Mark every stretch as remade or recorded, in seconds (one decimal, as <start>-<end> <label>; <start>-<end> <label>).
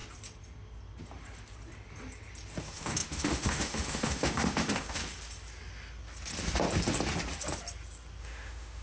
0.0-2.6 recorded; 2.6-5.0 remade; 5.0-8.2 recorded; 8.2-8.8 remade